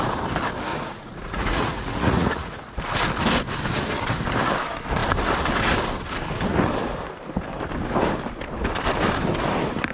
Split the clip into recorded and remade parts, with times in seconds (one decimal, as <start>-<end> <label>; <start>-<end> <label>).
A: 0.0-0.7 recorded; 0.7-2.8 remade; 2.8-9.9 recorded